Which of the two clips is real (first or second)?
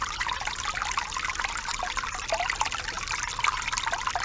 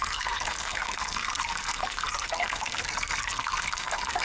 first